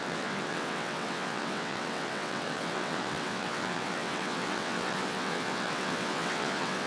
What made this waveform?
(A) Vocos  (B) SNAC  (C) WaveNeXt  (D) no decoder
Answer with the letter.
C